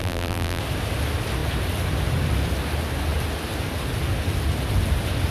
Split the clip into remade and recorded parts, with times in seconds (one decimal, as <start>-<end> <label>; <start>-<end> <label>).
0.0-0.6 remade; 0.6-5.3 recorded